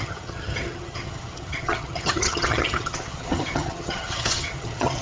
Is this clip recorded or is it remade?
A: remade